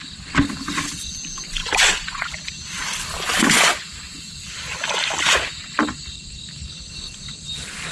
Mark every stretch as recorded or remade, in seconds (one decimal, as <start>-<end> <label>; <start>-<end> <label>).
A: 0.0-1.6 recorded; 1.6-2.3 remade; 2.3-3.3 recorded; 3.3-4.3 remade; 4.3-7.9 recorded

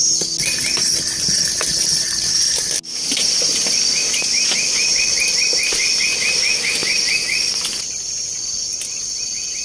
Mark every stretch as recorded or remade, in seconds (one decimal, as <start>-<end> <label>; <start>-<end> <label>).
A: 0.0-9.6 recorded

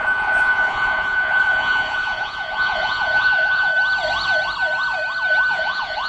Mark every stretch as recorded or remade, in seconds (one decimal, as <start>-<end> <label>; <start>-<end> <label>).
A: 0.0-3.7 remade; 3.7-5.5 recorded; 5.5-6.1 remade

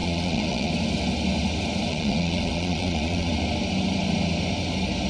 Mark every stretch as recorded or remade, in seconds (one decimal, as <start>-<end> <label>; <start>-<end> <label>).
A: 0.0-0.7 remade; 0.7-1.9 recorded; 1.9-3.3 remade; 3.3-5.1 recorded

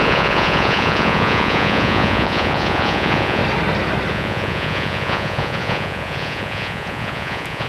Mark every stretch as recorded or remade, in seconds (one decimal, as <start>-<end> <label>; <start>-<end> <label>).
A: 0.0-3.4 remade; 3.4-4.1 recorded; 4.1-7.7 remade

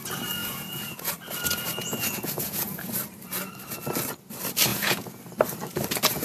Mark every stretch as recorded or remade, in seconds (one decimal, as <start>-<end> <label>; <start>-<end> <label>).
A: 0.0-0.4 recorded; 0.4-1.1 remade; 1.1-1.7 recorded; 1.7-2.9 remade; 2.9-4.7 recorded; 4.7-5.2 remade; 5.2-6.2 recorded

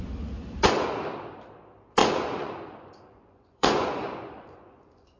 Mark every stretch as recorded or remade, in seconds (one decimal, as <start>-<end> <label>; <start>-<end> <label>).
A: 0.0-2.0 recorded; 2.0-5.2 remade

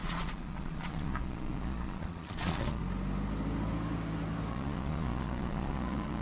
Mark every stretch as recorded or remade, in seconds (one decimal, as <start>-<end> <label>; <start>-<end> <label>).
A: 0.0-2.8 remade; 2.8-4.5 recorded; 4.5-6.2 remade